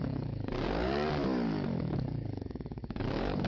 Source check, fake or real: fake